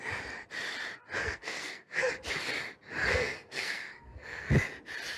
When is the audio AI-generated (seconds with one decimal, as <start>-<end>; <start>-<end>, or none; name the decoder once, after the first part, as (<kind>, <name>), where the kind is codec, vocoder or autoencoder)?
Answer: 1.2-2.1 (codec, SNAC); 3.0-4.5